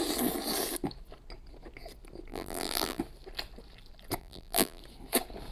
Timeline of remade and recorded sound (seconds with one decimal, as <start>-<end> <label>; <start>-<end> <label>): 0.0-2.3 recorded; 2.3-3.0 remade; 3.0-4.2 recorded; 4.2-4.8 remade; 4.8-5.5 recorded